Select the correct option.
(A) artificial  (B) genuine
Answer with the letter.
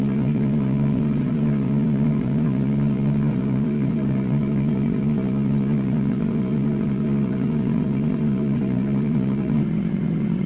A